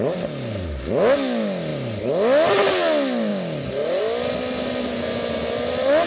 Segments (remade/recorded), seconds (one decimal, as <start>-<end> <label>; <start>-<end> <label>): 0.0-6.1 recorded